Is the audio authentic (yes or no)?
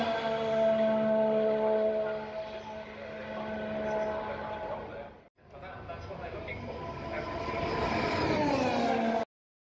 yes